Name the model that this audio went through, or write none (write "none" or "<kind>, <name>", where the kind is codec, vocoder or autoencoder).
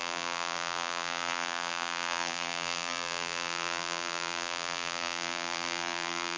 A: vocoder, BigVGAN v2